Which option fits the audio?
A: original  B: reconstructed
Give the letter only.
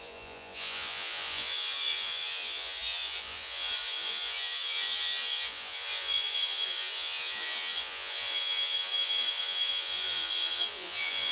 B